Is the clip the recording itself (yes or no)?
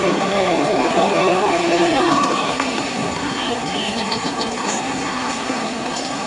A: no